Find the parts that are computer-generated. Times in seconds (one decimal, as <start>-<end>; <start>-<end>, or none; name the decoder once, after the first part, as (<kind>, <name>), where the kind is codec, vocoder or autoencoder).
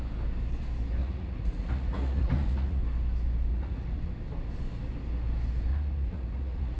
1.0-2.8 (vocoder, Vocos); 3.5-4.1; 5.7-6.8